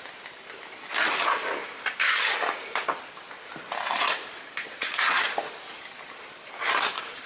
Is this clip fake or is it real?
real